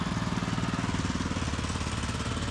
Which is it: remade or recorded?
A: recorded